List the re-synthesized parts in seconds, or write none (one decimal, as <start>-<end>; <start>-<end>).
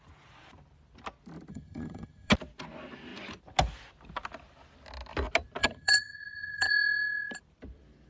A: 1.5-2.3; 5.6-6.7